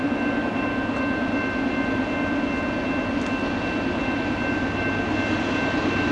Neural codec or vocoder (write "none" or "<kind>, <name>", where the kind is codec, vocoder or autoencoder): none